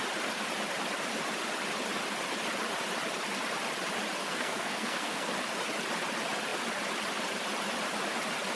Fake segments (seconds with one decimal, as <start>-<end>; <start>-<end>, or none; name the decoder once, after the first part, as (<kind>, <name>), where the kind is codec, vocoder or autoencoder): 4.2-5.3 (codec, SNAC)